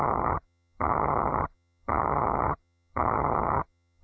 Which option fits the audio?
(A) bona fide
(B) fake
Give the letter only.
B